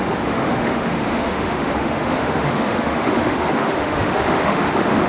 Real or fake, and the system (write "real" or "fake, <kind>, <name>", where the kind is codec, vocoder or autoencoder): fake, autoencoder, DAC-VAE